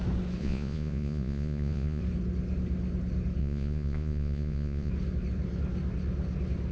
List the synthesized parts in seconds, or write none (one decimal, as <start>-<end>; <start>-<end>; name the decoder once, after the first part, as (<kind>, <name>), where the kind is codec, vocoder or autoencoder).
0.4-2.0 (vocoder, Vocos); 3.4-4.9